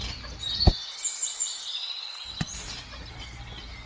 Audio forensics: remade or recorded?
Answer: recorded